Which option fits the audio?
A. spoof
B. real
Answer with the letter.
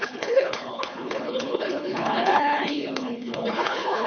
A